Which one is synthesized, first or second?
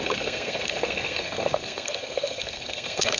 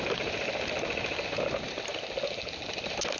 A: first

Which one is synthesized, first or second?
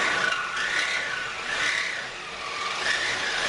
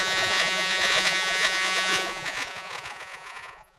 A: second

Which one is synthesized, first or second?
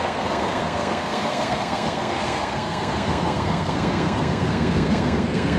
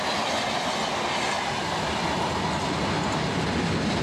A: first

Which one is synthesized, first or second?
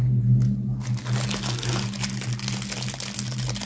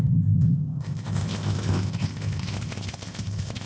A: second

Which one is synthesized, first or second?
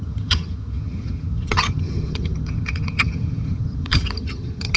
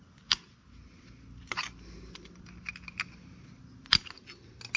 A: first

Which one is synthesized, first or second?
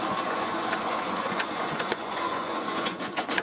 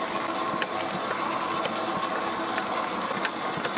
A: first